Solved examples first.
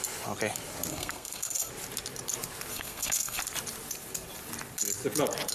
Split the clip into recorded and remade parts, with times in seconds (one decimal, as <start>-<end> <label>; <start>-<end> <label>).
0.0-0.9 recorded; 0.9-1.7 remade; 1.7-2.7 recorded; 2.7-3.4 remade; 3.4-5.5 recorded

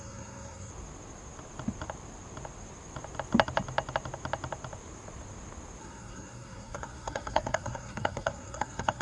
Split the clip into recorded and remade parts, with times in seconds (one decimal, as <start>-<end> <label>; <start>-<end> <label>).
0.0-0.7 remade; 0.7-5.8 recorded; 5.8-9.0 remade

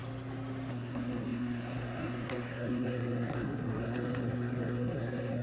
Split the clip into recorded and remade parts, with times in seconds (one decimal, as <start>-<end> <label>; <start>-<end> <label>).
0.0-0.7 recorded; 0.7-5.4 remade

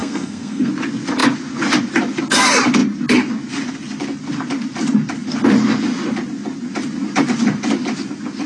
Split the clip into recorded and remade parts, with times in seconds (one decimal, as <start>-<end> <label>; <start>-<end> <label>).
0.0-0.7 remade; 0.7-8.5 recorded

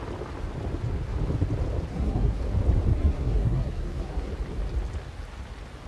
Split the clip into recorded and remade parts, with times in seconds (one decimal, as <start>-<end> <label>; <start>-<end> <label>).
0.0-1.9 recorded; 1.9-2.4 remade; 2.4-2.9 recorded; 2.9-4.3 remade; 4.3-5.9 recorded

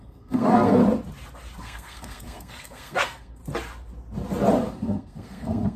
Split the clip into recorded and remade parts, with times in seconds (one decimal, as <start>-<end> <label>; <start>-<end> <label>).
0.0-0.8 remade; 0.8-1.6 recorded; 1.6-3.4 remade; 3.4-4.7 recorded; 4.7-5.8 remade

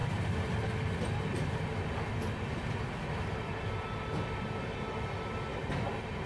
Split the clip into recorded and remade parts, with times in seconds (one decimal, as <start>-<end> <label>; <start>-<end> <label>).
0.0-6.3 recorded

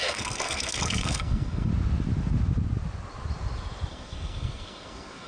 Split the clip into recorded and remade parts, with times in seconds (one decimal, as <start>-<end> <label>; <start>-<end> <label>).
0.0-1.7 remade; 1.7-3.9 recorded; 3.9-5.3 remade